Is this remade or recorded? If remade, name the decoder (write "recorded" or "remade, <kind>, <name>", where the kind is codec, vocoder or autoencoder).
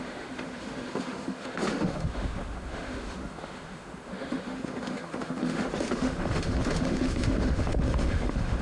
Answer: remade, autoencoder, DAC-VAE